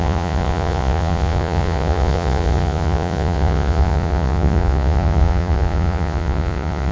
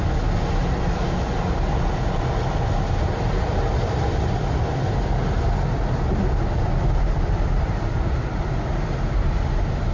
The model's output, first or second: first